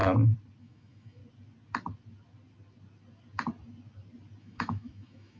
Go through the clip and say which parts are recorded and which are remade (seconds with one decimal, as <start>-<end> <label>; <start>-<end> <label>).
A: 0.0-0.6 recorded; 0.6-1.2 remade; 1.2-4.4 recorded; 4.4-5.4 remade